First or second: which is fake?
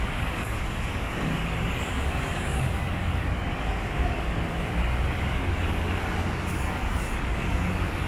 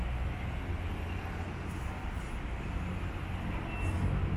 first